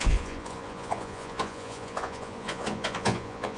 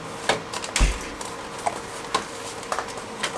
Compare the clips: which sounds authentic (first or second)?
second